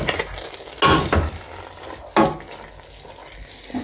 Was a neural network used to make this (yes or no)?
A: no